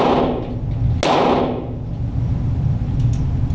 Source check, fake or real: real